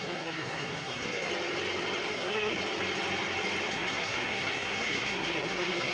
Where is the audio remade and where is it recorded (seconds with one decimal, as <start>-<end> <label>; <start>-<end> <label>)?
0.0-1.3 remade; 1.3-2.1 recorded; 2.1-2.6 remade; 2.6-3.7 recorded; 3.7-5.9 remade